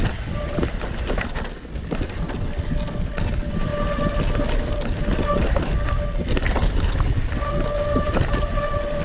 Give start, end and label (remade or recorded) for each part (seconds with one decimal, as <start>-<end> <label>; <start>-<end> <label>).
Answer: 0.0-9.0 recorded